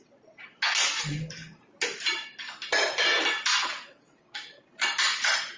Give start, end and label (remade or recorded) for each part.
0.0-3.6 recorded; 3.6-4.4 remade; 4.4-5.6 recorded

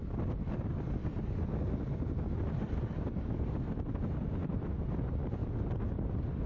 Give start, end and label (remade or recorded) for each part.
0.0-1.0 recorded; 1.0-4.9 remade; 4.9-6.5 recorded